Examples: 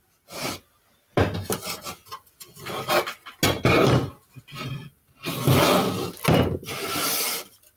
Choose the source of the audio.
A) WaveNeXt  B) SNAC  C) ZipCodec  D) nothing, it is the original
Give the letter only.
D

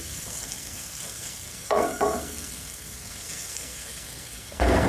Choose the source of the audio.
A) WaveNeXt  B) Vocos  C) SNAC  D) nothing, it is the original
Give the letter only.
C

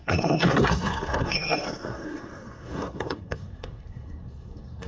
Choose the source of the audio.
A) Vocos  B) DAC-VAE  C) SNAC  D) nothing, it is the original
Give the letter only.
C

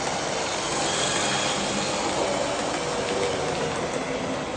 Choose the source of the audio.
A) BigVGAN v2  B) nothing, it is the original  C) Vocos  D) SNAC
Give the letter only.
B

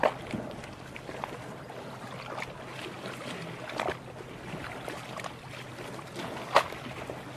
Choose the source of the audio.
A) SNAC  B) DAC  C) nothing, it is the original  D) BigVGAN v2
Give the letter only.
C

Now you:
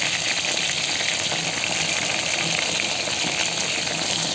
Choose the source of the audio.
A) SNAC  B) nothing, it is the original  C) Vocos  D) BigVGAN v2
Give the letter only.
B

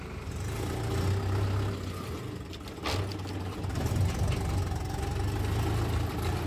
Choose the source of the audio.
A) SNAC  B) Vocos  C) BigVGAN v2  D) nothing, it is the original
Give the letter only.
D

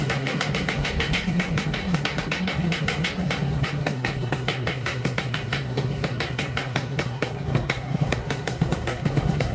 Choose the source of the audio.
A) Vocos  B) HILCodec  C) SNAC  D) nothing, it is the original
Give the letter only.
C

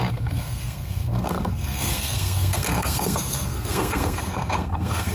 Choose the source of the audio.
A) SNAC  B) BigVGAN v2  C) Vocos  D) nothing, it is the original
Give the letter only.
A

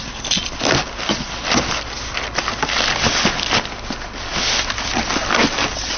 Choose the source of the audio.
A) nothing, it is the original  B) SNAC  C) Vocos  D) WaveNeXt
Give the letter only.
A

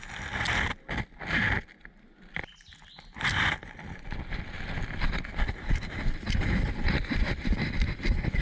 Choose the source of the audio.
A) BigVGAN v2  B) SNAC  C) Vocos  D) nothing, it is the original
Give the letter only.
D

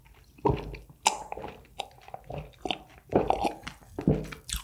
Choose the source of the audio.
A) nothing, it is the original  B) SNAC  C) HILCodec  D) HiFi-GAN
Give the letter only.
A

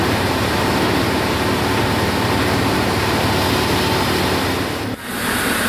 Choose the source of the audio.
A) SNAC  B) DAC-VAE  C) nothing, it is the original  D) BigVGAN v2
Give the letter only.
C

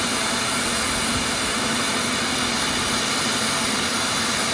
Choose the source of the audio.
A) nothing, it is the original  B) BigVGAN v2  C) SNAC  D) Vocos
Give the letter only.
A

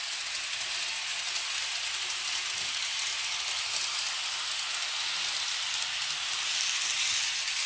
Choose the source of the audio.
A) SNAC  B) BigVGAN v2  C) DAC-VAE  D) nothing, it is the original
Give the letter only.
D